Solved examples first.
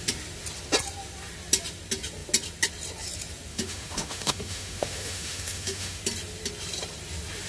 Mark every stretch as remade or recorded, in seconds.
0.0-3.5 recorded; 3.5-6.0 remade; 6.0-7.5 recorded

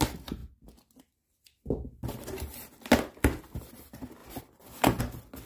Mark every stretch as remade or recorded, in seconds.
0.0-5.5 recorded